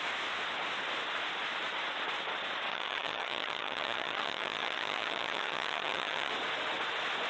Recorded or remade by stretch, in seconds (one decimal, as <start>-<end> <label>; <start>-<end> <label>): 0.0-2.7 recorded; 2.7-6.3 remade; 6.3-7.3 recorded

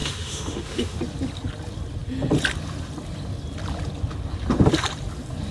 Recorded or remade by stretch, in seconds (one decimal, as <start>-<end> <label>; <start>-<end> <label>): 0.0-1.0 remade; 1.0-5.5 recorded

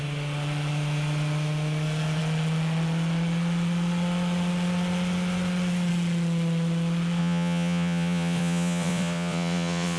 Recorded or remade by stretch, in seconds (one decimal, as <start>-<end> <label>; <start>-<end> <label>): 0.0-7.2 recorded; 7.2-10.0 remade

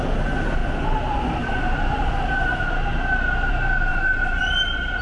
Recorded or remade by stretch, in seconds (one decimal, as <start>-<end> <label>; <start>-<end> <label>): 0.0-3.9 recorded; 3.9-5.0 remade

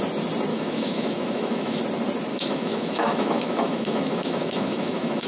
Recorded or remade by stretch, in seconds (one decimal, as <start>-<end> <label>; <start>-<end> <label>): 0.0-0.5 recorded; 0.5-1.8 remade; 1.8-2.3 recorded; 2.3-5.3 remade